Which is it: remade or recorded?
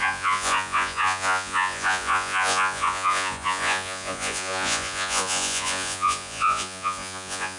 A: remade